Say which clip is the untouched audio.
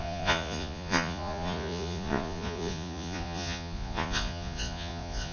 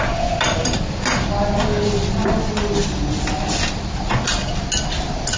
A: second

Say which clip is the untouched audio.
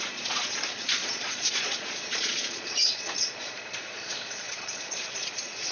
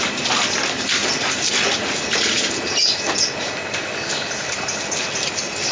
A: second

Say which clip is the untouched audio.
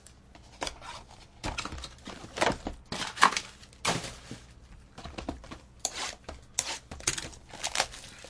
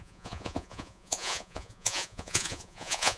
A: first